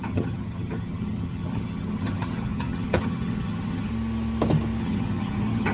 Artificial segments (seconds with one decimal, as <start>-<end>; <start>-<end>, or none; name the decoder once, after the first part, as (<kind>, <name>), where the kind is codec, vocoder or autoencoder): 0.0-3.9 (vocoder, HiFi-GAN); 4.8-5.7